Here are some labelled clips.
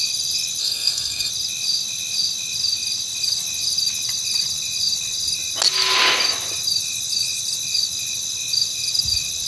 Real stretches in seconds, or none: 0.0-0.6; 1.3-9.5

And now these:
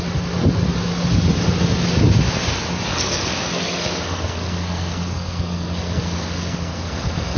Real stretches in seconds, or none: 0.0-2.9

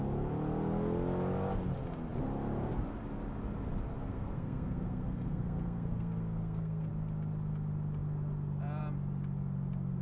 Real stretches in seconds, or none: 0.0-4.1; 6.9-10.0

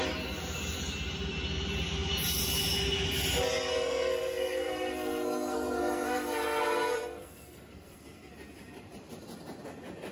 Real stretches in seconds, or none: 0.0-3.7; 8.3-10.1

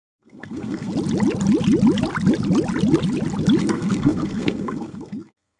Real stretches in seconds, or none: 0.9-3.6